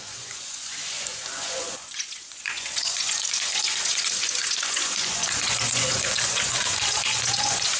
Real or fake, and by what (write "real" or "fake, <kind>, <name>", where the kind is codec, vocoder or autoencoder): fake, vocoder, Vocos